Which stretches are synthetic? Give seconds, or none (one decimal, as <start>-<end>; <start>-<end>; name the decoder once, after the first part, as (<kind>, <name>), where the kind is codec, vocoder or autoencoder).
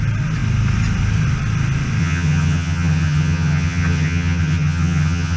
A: 2.0-5.4 (vocoder, HiFi-GAN)